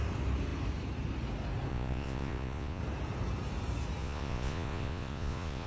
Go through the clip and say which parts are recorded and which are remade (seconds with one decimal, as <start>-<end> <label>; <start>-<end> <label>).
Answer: 0.0-1.7 recorded; 1.7-2.8 remade; 2.8-4.0 recorded; 4.0-5.7 remade